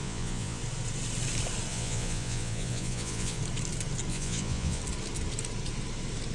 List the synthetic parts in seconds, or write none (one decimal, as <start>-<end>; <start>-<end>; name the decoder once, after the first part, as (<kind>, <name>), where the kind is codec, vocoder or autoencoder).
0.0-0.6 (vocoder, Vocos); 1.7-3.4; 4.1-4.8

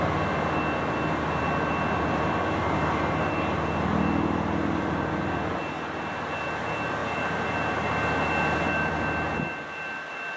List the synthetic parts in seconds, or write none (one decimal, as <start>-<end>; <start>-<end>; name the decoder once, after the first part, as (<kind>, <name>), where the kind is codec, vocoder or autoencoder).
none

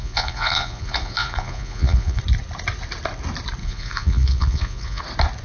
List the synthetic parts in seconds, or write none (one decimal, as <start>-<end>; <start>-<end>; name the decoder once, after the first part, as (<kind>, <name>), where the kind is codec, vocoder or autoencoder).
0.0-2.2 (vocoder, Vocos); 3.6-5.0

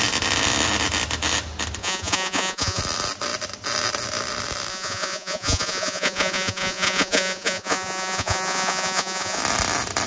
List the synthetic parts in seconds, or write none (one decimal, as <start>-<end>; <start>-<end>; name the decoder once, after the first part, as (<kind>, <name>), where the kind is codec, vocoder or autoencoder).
1.8-2.8 (vocoder, Vocos); 4.7-9.4

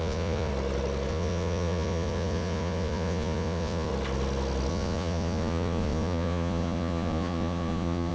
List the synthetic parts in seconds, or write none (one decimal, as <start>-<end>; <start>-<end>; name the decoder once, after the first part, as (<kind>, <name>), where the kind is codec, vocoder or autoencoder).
0.0-0.5 (vocoder, Vocos); 1.1-3.9; 4.7-8.1

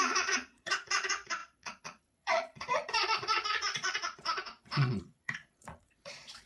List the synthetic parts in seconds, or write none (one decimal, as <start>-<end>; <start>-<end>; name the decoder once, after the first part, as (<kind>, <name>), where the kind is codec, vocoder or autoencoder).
0.0-6.5 (vocoder, Vocos)

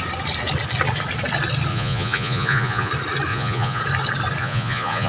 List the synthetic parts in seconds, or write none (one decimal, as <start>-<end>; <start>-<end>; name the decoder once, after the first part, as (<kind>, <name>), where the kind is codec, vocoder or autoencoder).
1.7-2.9 (vocoder, Vocos); 3.3-3.8; 4.4-5.1

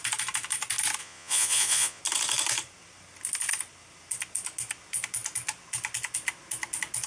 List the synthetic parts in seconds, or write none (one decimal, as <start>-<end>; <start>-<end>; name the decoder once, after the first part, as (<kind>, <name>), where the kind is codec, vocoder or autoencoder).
1.0-2.0 (vocoder, Vocos)